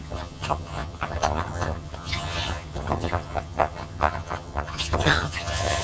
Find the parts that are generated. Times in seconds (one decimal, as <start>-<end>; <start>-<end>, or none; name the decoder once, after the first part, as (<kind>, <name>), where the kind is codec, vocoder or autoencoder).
0.0-5.8 (vocoder, HiFi-GAN)